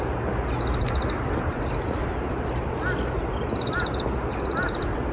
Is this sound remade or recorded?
recorded